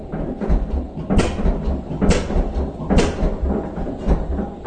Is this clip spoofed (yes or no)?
no